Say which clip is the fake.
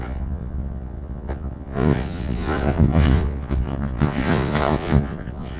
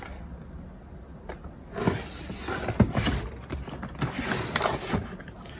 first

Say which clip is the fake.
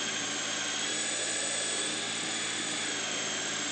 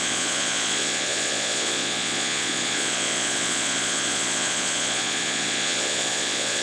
second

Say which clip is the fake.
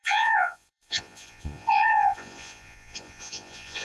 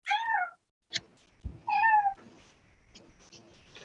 first